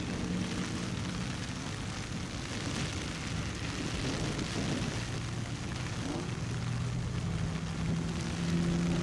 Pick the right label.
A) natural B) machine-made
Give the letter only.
A